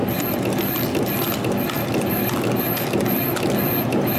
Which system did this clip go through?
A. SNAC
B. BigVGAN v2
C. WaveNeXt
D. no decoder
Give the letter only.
D